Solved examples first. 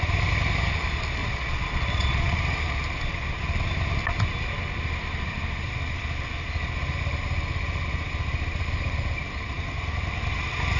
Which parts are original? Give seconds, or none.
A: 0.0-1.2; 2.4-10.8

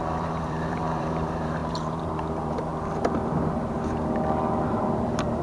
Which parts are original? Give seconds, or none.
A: 2.7-4.7

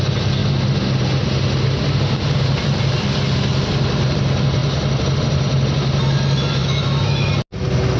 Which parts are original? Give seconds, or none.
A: 0.0-6.6; 7.3-8.0

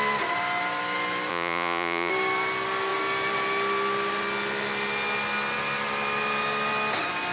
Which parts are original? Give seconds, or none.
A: 0.0-1.3; 2.1-7.3

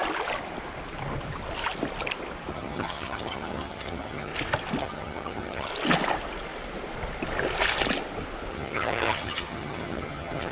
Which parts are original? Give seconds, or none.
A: 0.0-2.5; 4.3-4.8; 5.7-8.5

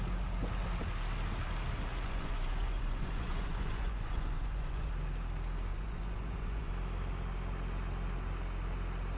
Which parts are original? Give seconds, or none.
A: 0.0-1.9; 4.9-5.7; 6.7-9.2

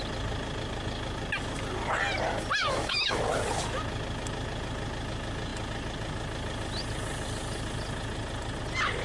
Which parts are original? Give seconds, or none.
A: 0.0-2.6; 3.2-9.0

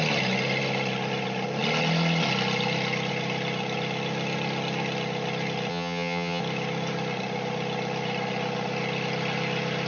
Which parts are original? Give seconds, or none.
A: 0.0-5.7; 6.4-9.9